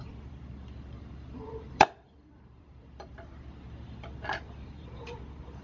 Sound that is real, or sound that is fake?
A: fake